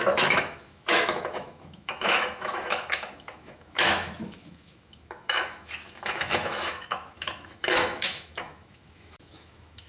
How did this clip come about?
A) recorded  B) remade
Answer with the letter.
B